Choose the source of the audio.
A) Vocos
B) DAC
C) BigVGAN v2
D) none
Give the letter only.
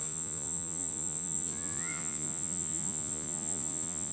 A